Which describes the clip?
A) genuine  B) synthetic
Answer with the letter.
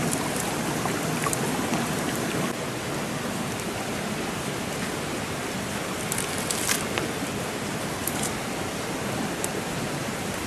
A